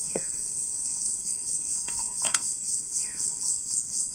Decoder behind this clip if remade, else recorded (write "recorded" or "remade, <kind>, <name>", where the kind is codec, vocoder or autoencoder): remade, codec, SNAC